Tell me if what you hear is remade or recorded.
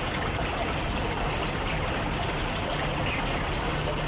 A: recorded